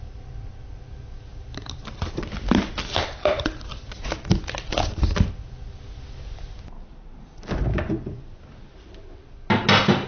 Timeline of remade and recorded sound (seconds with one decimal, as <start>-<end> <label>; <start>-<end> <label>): 0.0-7.7 recorded; 7.7-8.4 remade; 8.4-10.1 recorded